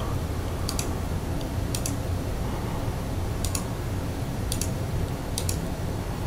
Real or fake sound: fake